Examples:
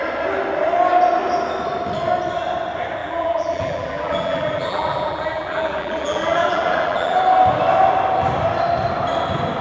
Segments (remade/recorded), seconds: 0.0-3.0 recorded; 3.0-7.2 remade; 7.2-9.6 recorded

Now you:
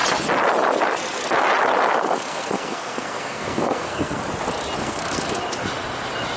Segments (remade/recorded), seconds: 0.0-1.9 recorded; 1.9-4.2 remade; 4.2-4.8 recorded; 4.8-5.4 remade; 5.4-6.4 recorded